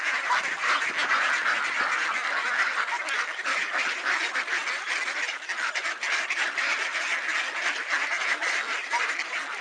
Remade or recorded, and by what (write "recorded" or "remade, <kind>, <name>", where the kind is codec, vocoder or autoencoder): recorded